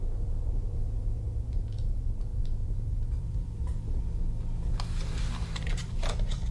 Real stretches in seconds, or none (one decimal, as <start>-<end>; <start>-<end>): 3.7-5.8

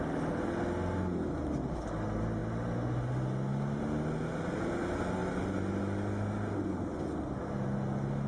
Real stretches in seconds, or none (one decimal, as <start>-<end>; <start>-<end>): 0.0-8.3

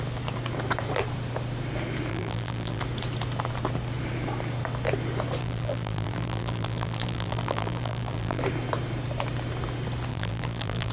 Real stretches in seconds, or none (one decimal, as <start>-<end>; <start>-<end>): 0.0-2.1; 2.8-5.4; 8.4-10.1

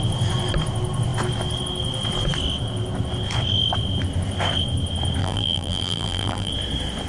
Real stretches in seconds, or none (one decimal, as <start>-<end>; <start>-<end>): 0.0-5.2; 6.5-7.1

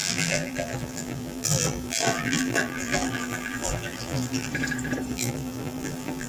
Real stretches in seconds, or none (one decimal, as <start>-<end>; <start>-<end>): 4.5-5.1

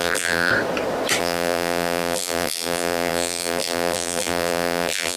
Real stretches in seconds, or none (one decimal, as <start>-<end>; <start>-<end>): 0.5-1.2

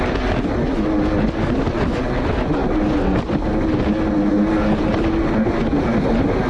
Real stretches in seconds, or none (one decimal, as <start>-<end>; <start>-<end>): 0.0-6.5

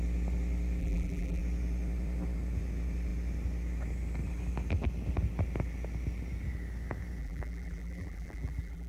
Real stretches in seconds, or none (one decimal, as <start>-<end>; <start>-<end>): 0.0-0.8; 1.4-7.2